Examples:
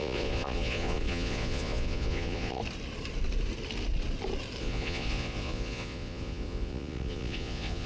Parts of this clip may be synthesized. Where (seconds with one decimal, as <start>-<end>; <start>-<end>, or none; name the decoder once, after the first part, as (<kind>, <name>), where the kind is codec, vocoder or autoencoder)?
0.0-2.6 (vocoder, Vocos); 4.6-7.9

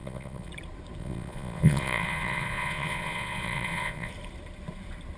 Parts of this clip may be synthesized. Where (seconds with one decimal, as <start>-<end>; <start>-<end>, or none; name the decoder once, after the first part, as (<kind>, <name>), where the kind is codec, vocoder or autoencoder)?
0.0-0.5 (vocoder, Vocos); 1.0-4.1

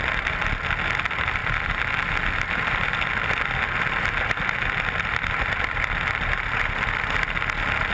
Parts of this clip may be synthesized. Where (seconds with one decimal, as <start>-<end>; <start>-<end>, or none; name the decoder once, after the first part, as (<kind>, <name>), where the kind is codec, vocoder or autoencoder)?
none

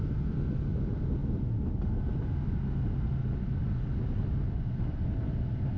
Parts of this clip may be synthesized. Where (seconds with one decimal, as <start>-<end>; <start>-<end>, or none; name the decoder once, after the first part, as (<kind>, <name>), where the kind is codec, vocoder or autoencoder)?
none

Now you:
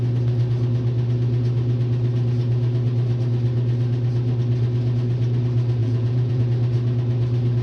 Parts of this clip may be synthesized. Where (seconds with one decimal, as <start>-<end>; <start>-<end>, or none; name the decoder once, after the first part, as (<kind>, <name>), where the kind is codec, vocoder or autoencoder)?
5.8-6.4 (vocoder, Vocos)

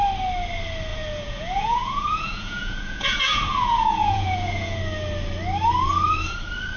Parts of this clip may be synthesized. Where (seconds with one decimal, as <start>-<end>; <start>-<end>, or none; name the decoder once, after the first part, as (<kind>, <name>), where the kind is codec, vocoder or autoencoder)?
0.9-4.8 (vocoder, Vocos)

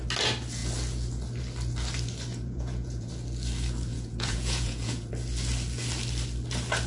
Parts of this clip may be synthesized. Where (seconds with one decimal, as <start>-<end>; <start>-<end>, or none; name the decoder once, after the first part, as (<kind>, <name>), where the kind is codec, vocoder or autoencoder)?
2.3-3.1 (vocoder, Vocos); 3.9-5.1

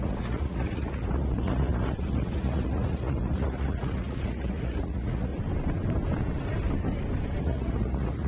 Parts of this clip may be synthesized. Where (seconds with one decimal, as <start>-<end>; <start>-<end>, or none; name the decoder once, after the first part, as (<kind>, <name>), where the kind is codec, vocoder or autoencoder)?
0.0-5.3 (vocoder, Vocos); 7.4-8.3